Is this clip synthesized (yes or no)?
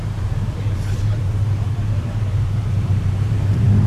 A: yes